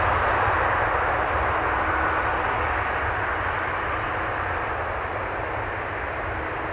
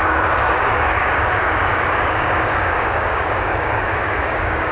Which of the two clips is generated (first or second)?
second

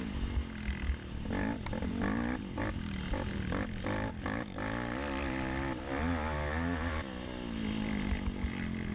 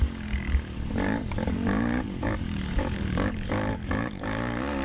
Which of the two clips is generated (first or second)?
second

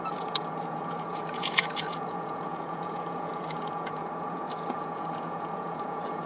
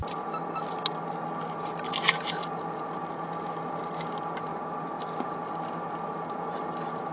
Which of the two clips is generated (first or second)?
first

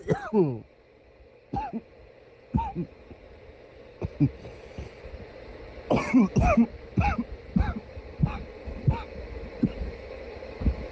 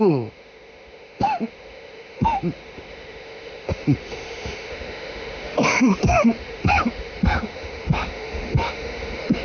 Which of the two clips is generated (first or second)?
second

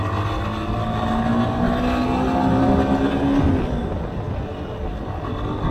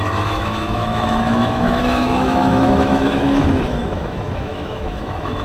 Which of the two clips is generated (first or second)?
second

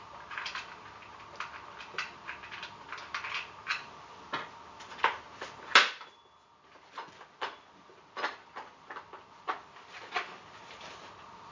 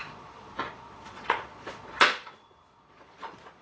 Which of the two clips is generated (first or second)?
second